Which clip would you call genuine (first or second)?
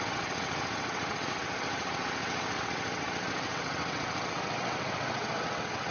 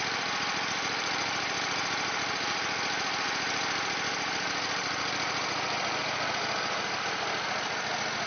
second